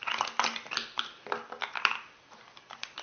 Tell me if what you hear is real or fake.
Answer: fake